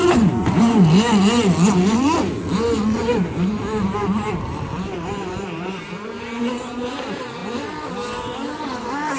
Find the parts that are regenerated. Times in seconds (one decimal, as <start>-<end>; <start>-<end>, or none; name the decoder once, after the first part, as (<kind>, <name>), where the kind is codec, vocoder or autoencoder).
0.0-0.6 (vocoder, BigVGAN v2); 3.0-6.4